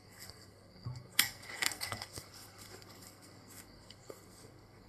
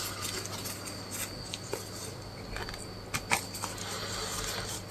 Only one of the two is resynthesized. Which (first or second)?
first